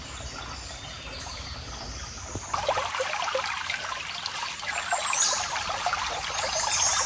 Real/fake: real